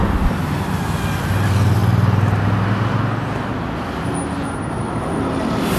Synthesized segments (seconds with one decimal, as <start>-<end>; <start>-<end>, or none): none